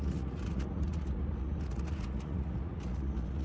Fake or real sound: fake